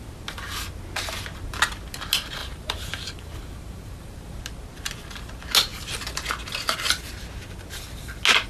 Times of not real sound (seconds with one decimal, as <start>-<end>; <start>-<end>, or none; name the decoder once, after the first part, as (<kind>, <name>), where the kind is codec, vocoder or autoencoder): 2.4-4.4 (vocoder, BigVGAN v2)